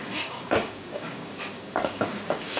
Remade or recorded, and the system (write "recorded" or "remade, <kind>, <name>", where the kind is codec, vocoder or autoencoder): remade, codec, DAC